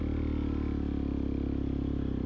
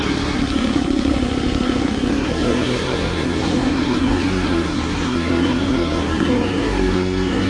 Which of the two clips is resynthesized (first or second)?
second